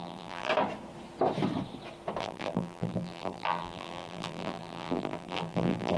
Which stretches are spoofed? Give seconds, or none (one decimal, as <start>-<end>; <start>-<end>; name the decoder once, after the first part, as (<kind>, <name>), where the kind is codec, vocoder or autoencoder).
0.0-0.5 (vocoder, BigVGAN v2); 2.2-6.0